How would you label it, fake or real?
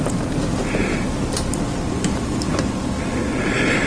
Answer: real